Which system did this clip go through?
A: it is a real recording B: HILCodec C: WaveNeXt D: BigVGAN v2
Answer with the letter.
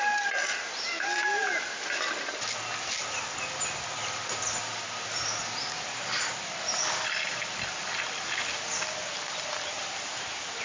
A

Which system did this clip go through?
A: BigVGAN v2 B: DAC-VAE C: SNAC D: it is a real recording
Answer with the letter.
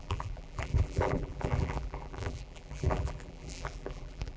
A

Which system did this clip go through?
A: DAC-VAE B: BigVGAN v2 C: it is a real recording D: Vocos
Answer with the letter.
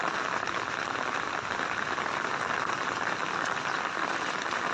B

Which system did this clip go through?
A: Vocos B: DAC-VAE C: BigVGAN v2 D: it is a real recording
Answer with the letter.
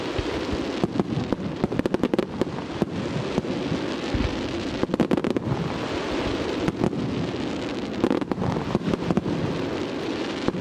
D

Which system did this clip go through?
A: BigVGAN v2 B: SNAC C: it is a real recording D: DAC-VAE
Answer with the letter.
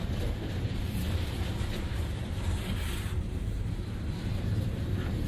A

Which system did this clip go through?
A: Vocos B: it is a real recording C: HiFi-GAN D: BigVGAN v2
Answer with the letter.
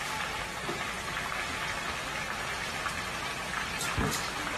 D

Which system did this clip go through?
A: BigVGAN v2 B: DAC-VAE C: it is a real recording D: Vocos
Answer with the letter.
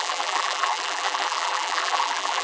A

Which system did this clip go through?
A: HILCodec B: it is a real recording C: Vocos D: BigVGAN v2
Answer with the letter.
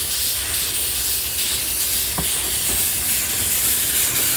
B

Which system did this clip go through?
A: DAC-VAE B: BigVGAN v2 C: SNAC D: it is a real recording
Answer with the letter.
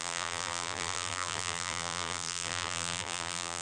B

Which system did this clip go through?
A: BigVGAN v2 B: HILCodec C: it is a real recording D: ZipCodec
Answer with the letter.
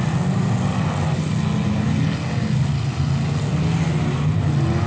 C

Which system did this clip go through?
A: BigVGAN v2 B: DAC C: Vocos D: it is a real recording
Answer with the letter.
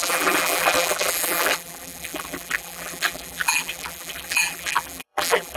A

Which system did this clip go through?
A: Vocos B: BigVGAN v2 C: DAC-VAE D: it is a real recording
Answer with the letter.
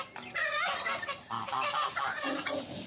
D